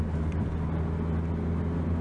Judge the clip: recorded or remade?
recorded